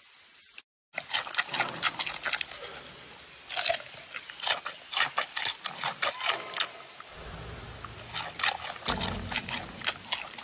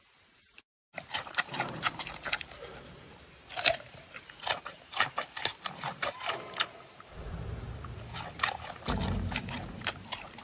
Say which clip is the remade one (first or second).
second